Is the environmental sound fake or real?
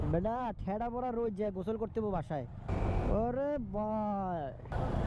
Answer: real